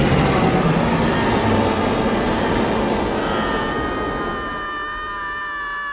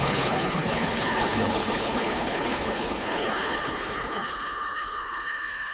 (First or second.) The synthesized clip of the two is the second